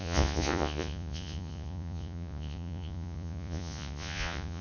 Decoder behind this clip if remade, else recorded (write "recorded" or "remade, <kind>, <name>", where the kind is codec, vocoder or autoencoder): remade, vocoder, Vocos